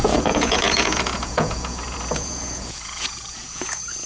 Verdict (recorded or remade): remade